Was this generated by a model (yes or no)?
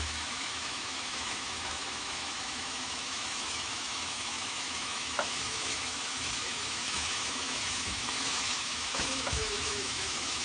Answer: yes